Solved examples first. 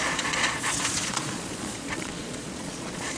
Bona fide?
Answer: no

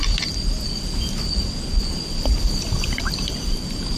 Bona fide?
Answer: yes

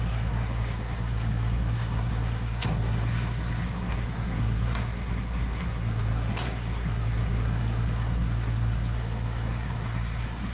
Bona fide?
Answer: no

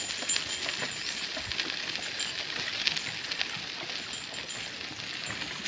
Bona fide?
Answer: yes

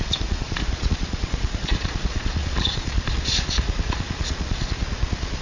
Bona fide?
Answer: no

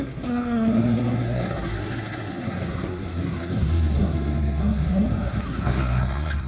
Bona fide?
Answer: no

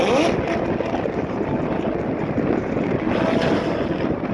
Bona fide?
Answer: yes